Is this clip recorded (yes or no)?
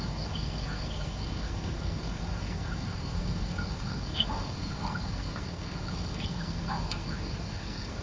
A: no